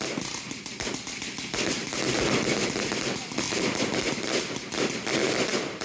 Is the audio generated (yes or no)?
no